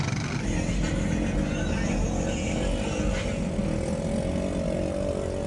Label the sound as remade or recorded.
recorded